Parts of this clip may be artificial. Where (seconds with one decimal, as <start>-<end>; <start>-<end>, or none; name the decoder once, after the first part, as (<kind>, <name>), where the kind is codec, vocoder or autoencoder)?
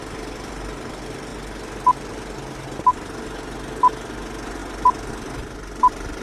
none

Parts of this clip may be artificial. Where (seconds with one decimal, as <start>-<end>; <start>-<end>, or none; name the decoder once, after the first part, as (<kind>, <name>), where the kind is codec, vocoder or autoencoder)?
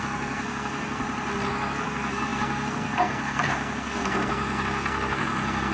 0.0-1.0 (codec, SNAC); 1.5-5.7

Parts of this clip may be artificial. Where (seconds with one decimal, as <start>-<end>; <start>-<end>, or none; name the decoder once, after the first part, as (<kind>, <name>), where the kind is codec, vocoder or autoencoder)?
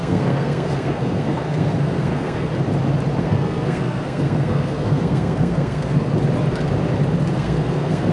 0.0-2.5 (codec, SNAC); 3.2-6.1; 7.3-8.1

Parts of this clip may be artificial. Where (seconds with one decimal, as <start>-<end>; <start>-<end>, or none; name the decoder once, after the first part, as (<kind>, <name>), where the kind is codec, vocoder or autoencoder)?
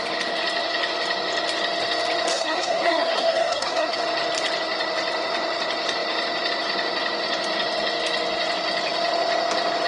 2.3-4.0 (codec, SNAC)